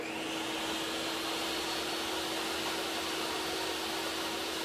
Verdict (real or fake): real